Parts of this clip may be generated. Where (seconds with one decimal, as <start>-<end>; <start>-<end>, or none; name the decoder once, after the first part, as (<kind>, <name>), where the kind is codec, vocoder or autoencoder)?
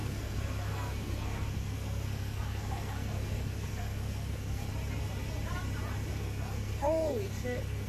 0.0-4.7 (codec, SNAC); 6.1-7.9